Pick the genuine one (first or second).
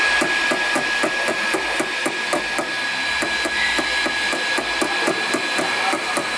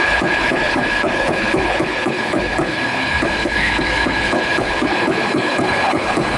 first